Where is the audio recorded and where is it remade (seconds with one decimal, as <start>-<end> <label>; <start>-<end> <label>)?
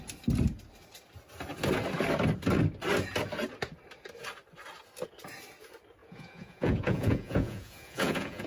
0.0-6.0 recorded; 6.0-8.5 remade